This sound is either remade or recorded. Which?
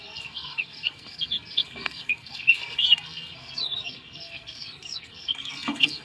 remade